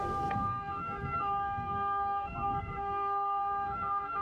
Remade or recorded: remade